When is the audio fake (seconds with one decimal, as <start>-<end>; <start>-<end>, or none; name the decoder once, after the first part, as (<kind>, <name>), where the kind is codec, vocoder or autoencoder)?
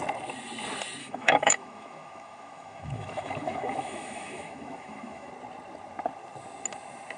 1.0-5.3 (autoencoder, DAC-VAE)